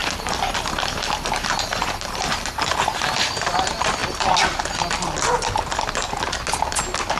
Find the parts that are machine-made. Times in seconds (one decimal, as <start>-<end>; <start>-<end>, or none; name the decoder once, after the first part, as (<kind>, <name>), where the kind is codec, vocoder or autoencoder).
1.7-2.7 (vocoder, BigVGAN v2)